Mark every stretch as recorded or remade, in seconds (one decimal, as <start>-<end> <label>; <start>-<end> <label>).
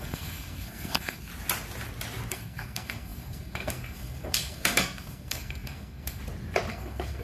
0.0-1.3 remade; 1.3-2.3 recorded; 2.3-6.2 remade; 6.2-6.7 recorded; 6.7-7.2 remade